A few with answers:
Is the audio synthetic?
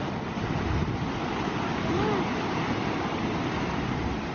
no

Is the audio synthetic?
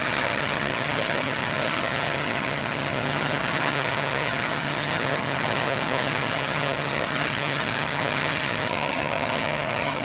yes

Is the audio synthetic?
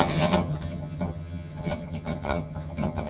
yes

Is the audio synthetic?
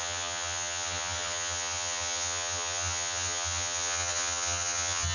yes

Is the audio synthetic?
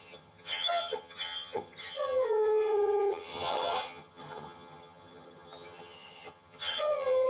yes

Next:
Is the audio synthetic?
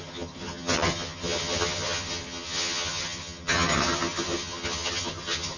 yes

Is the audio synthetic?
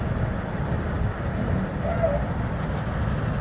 no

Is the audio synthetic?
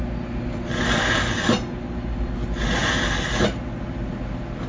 no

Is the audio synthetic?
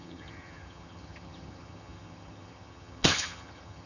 yes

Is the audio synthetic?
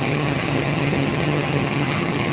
yes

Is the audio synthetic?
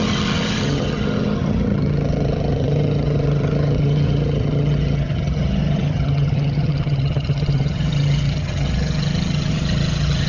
yes